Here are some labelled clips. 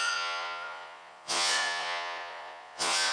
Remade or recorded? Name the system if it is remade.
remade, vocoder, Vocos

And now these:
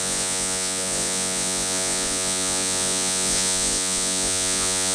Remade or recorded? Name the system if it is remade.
remade, vocoder, Vocos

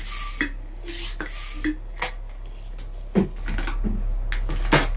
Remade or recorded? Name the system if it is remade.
recorded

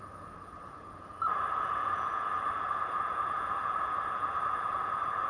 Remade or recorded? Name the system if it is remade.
remade, vocoder, Vocos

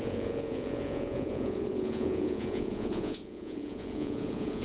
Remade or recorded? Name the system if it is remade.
remade, vocoder, Vocos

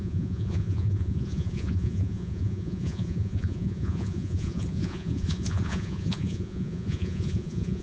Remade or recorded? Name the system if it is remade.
remade, vocoder, Vocos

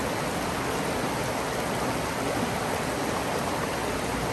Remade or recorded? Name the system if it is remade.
recorded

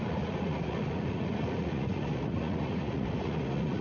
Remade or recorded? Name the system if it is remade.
remade, vocoder, Vocos